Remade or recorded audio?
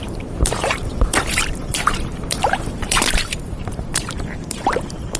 remade